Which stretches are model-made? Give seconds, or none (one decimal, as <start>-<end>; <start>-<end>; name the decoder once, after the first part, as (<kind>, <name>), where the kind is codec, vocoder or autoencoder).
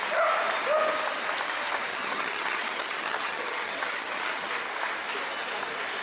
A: 1.9-4.5 (vocoder, HiFi-GAN)